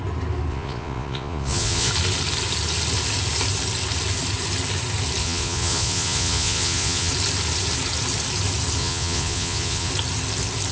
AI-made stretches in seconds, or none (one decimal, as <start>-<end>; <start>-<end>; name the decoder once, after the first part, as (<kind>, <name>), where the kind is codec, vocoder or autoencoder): 0.5-1.9 (vocoder, Vocos); 5.2-7.1; 8.8-9.9